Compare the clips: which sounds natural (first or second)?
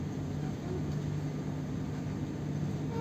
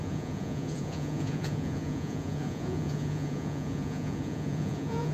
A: first